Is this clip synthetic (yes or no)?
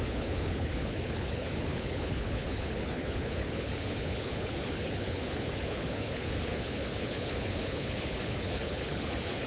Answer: yes